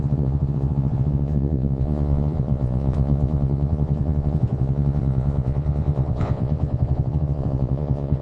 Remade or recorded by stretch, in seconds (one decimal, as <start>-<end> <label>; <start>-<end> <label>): 0.0-8.2 remade